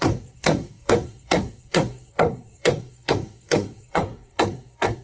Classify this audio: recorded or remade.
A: remade